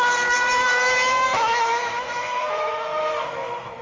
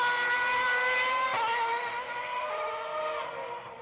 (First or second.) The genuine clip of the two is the second